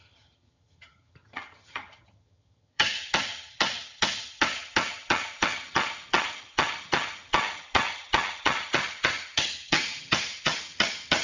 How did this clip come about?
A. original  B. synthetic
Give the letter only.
B